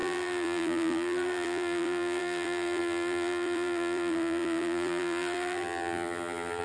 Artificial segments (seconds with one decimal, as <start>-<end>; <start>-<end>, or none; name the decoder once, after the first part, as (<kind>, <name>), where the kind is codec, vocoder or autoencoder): 0.0-6.6 (vocoder, BigVGAN v2)